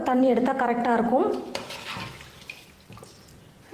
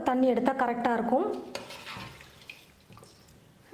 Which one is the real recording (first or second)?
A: second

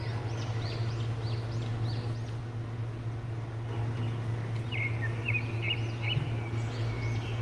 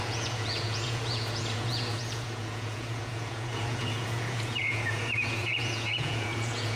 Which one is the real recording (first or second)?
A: first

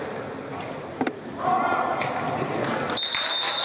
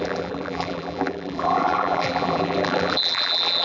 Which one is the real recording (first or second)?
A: first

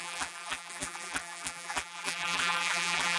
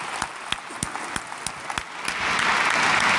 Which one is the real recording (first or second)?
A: second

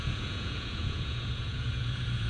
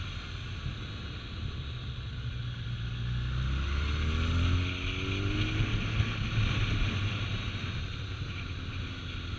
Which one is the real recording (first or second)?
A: second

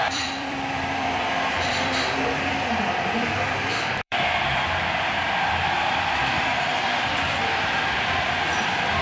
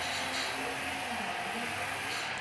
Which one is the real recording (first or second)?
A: second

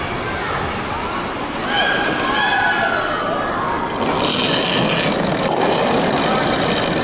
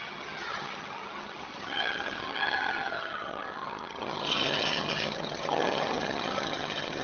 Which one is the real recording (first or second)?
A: first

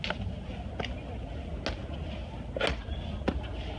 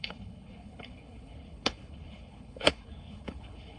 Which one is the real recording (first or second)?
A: first